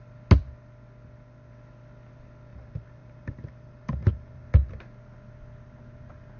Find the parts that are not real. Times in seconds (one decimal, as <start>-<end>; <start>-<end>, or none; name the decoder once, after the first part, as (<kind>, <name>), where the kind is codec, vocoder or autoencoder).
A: 2.5-4.4 (vocoder, BigVGAN v2)